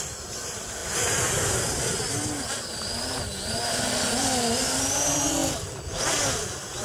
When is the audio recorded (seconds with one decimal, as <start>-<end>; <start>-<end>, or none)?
0.0-6.8